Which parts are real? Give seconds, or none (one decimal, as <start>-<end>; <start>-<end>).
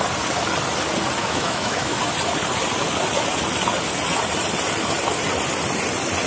0.0-1.2; 2.0-6.3